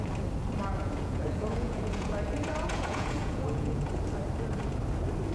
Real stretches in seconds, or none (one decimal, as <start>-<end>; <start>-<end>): 0.0-0.7; 3.9-5.3